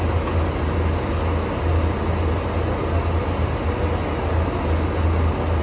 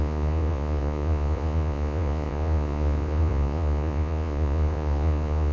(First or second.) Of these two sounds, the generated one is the second